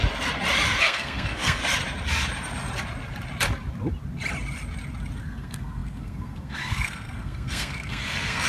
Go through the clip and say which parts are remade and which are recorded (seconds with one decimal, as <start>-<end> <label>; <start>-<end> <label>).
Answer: 0.0-0.8 recorded; 0.8-1.6 remade; 1.6-5.2 recorded; 5.2-8.5 remade